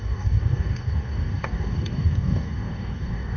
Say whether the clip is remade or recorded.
remade